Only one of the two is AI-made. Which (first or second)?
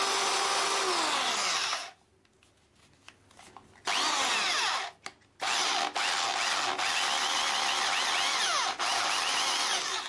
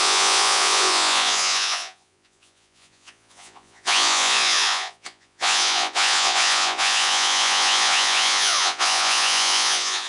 second